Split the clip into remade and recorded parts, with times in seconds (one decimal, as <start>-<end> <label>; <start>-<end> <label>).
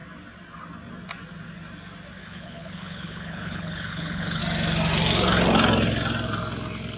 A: 0.0-2.2 recorded; 2.2-4.4 remade; 4.4-7.0 recorded